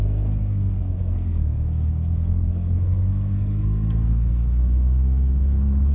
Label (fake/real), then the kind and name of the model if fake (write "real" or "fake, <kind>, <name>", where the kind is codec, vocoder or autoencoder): fake, codec, SNAC